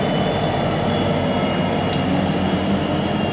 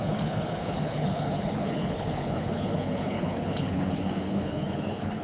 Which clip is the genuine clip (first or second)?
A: first